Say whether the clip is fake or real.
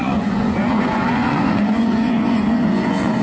fake